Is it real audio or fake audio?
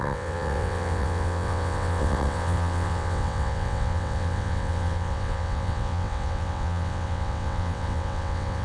fake